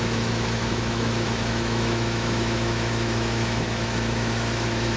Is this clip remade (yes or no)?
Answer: yes